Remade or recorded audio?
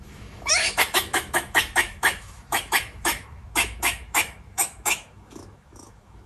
remade